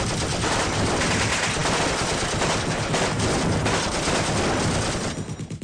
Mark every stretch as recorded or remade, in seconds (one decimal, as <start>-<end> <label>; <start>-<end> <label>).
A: 0.0-5.6 recorded